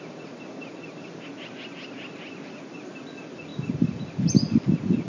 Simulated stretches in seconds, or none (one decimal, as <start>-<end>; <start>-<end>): none